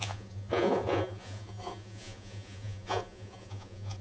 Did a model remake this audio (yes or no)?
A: yes